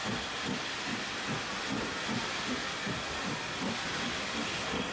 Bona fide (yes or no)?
yes